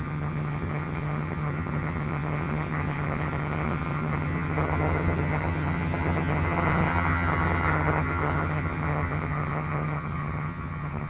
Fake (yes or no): yes